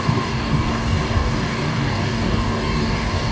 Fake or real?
fake